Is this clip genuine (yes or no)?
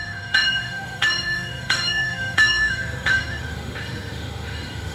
no